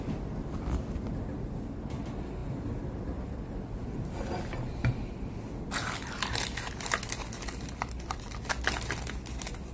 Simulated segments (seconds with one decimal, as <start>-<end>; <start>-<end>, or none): none